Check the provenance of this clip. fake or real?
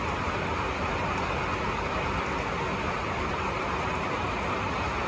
real